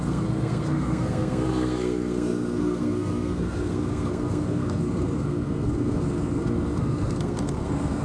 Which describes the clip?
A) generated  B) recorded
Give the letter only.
A